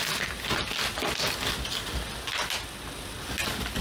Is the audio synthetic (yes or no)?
no